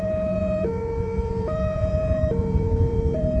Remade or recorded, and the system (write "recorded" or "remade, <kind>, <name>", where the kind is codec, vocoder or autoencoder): remade, vocoder, Vocos